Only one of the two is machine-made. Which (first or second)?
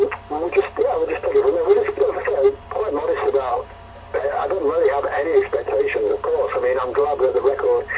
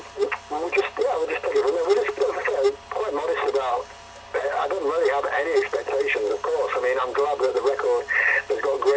first